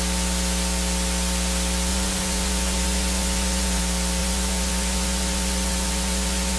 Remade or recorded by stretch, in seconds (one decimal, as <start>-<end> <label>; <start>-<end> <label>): 0.0-1.9 recorded; 1.9-3.8 remade; 3.8-4.2 recorded; 4.2-6.6 remade